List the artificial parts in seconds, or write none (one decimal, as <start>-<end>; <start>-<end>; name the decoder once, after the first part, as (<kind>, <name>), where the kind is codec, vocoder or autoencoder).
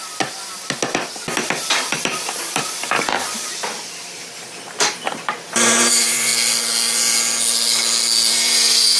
1.7-6.3 (vocoder, BigVGAN v2); 8.3-9.0